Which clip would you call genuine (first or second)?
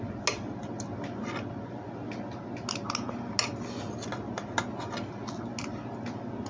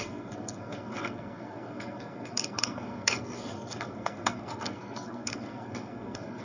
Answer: first